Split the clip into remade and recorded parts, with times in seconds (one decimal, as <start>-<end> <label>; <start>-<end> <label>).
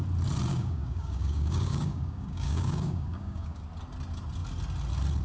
0.0-0.5 recorded; 0.5-3.6 remade; 3.6-5.2 recorded